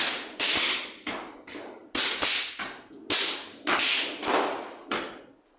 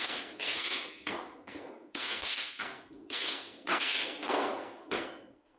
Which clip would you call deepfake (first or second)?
second